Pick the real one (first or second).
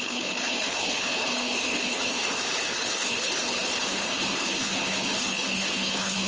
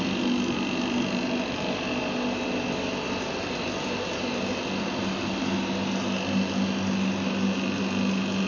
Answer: second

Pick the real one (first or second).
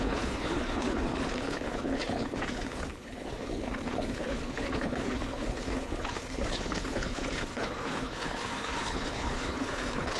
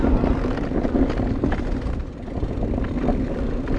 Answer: second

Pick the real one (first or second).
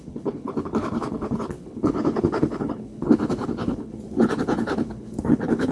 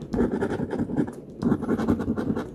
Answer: second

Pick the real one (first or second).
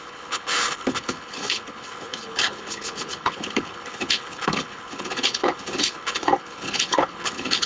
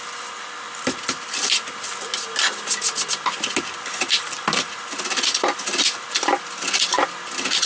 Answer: second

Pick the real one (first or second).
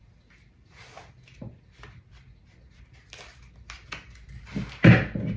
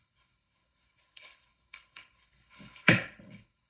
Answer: first